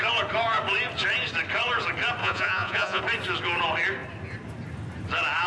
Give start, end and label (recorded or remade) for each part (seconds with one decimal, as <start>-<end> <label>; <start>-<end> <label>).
0.0-2.2 recorded; 2.2-3.0 remade; 3.0-5.5 recorded